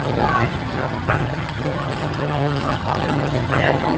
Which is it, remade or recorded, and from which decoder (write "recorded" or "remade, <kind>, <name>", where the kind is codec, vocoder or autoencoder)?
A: remade, vocoder, HiFi-GAN